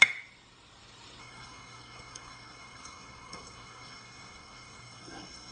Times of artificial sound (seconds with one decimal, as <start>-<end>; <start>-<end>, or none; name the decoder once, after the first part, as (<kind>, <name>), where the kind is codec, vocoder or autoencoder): 1.2-5.5 (codec, SNAC)